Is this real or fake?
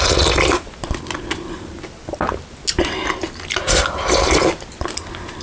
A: real